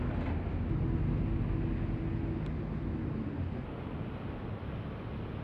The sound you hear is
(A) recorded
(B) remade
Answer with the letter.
A